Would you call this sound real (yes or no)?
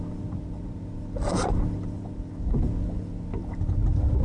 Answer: yes